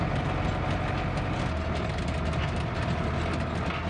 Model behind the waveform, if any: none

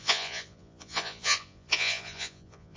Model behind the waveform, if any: vocoder, Vocos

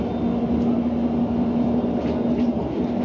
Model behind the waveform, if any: none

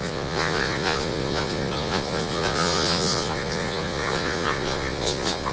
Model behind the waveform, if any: vocoder, Vocos